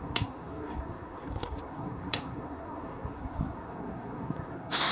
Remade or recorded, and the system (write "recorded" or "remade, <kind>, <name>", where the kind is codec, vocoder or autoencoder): remade, codec, SNAC